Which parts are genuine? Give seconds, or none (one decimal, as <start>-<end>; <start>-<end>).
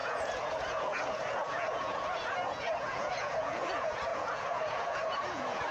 none